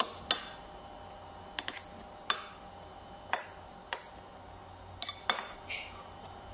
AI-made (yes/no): no